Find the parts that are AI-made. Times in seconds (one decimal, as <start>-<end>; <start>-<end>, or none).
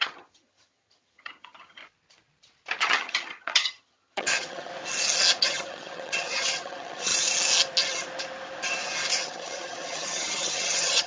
0.0-1.8; 2.8-4.7; 5.4-7.1; 9.2-11.1